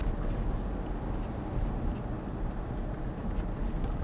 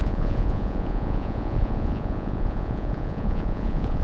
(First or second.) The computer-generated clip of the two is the second